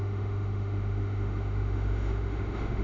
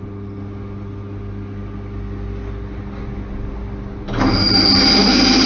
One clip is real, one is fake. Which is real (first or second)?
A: second